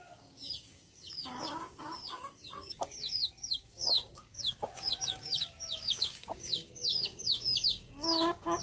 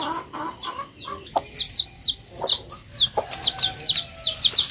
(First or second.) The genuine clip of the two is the second